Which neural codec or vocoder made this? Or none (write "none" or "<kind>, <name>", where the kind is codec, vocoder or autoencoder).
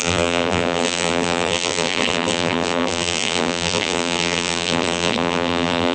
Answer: vocoder, BigVGAN v2